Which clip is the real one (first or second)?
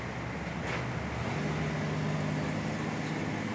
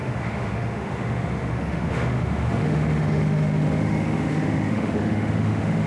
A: first